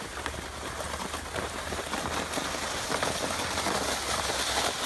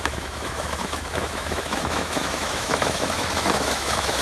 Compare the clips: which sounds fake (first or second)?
second